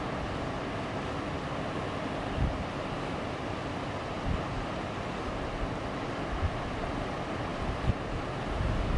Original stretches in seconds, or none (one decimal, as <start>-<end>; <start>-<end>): 0.0-9.0